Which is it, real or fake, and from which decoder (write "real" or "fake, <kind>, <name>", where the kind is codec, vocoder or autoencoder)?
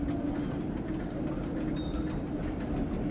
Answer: real